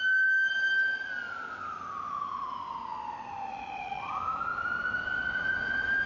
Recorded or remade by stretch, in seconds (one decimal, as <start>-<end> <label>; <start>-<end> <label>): 0.0-3.5 recorded; 3.5-4.1 remade; 4.1-6.1 recorded